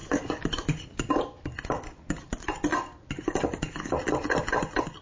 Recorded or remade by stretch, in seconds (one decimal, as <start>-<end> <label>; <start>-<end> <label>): 0.0-1.1 remade; 1.1-2.3 recorded; 2.3-3.5 remade; 3.5-5.0 recorded